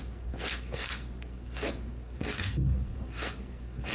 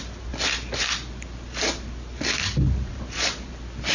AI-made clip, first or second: first